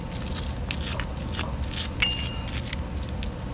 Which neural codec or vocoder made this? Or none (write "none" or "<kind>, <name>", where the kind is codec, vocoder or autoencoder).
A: none